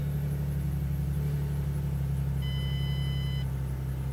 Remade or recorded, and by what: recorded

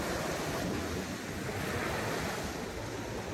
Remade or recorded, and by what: recorded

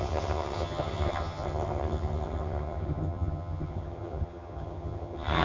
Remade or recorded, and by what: remade, vocoder, HiFi-GAN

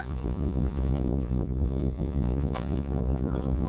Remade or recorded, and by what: remade, vocoder, Vocos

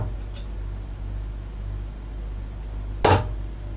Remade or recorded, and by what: recorded